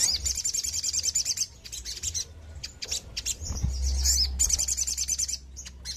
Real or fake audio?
real